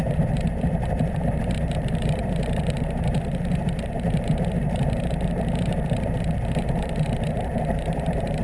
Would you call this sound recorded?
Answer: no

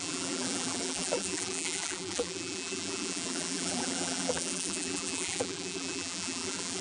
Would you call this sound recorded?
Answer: no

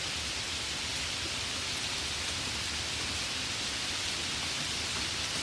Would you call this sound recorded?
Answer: yes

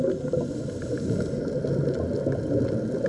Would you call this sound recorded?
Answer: yes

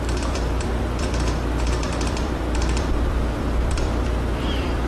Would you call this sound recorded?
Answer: no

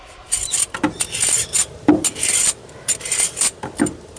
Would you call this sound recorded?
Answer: yes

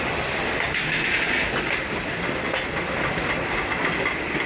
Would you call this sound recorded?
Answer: yes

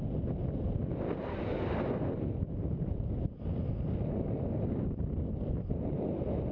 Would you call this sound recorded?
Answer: yes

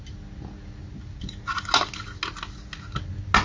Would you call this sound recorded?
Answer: yes